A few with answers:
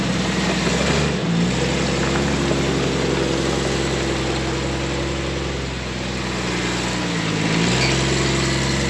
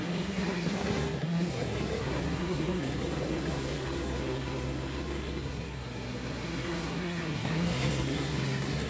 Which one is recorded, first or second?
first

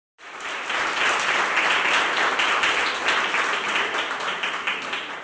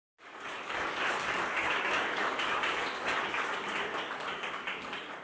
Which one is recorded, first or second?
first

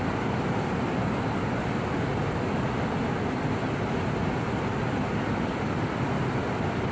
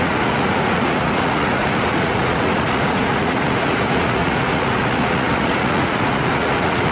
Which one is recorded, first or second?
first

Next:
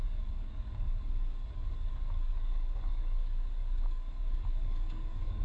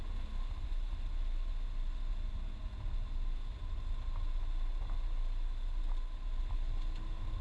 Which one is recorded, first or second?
second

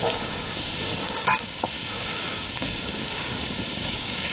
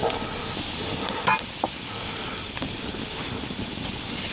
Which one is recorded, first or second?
second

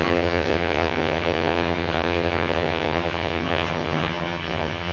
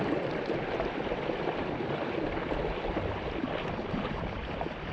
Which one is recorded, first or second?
second